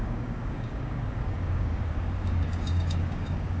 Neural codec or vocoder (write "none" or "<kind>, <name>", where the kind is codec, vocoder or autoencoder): codec, DAC